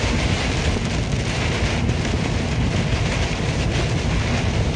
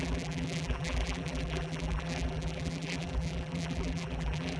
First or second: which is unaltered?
first